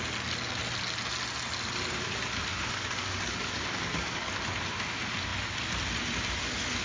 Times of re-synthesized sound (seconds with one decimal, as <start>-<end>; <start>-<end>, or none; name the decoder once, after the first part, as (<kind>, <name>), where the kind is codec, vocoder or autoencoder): 2.5-4.4 (codec, DAC)